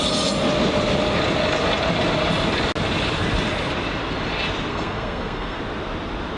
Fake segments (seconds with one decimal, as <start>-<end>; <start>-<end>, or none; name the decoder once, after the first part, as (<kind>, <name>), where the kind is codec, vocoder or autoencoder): 4.7-5.6 (codec, SNAC)